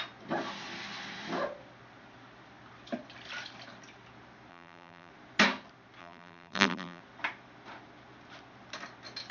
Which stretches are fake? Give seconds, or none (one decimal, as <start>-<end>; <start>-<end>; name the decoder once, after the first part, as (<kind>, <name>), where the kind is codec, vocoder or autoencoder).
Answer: 4.5-5.1 (vocoder, BigVGAN v2); 6.0-7.0